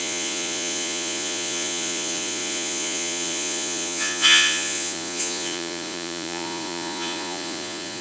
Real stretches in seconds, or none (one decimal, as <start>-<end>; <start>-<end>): none